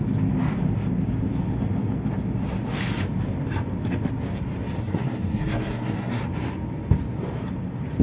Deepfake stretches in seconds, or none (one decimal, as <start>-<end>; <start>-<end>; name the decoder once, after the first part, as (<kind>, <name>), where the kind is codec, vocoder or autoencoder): 4.8-6.2 (codec, SNAC)